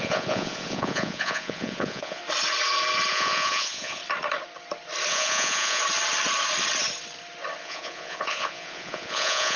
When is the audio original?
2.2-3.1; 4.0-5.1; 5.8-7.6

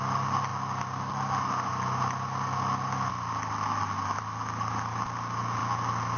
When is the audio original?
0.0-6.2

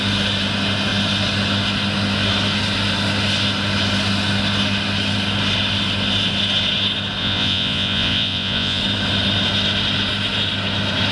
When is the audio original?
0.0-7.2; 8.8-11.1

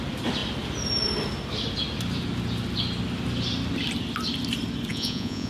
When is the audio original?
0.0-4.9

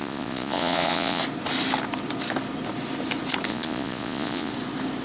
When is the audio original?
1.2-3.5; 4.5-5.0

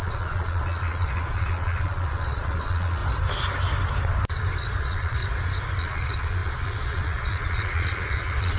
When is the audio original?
3.0-4.8; 5.2-5.8

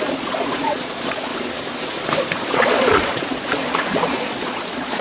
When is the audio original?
1.3-2.5

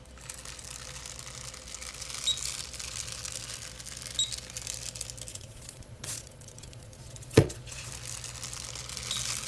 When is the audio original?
0.0-5.3; 7.9-9.5